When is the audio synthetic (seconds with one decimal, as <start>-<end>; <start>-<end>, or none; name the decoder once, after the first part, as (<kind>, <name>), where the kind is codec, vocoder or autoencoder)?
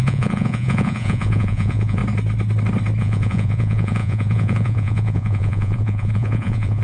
0.0-2.0 (vocoder, Vocos); 3.0-6.8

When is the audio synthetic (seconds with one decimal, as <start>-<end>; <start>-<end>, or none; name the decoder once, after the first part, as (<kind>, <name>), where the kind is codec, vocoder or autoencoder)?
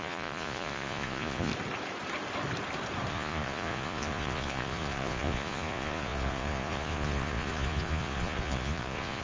0.0-1.5 (vocoder, Vocos); 3.1-9.2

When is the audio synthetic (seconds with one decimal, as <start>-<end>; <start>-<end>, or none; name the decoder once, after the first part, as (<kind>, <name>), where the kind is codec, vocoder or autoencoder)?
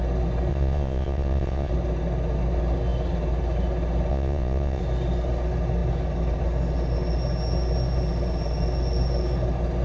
0.5-1.7 (vocoder, Vocos); 4.1-4.8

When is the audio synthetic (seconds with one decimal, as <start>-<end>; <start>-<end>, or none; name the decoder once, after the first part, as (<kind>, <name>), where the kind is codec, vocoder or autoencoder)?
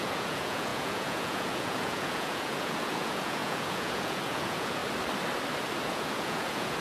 0.0-4.8 (vocoder, Vocos); 5.9-6.8